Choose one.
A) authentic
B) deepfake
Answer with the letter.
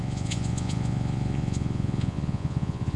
B